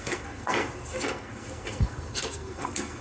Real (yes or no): no